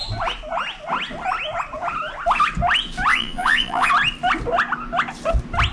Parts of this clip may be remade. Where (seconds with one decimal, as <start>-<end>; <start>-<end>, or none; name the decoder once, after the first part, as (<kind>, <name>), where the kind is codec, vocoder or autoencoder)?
3.1-3.9 (vocoder, Vocos)